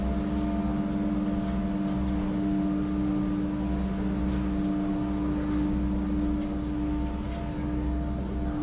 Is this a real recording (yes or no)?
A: yes